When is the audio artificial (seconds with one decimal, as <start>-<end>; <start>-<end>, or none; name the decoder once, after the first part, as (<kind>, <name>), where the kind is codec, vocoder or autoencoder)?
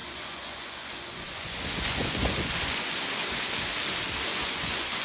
0.0-3.7 (vocoder, Vocos); 4.3-5.0